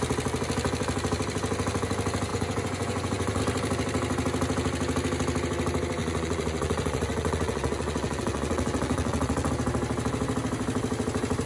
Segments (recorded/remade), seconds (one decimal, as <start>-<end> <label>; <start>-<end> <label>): 0.0-2.3 recorded; 2.3-3.4 remade; 3.4-6.0 recorded; 6.0-9.5 remade; 9.5-11.5 recorded